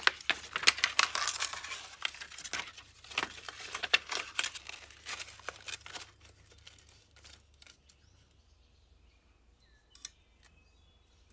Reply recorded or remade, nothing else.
recorded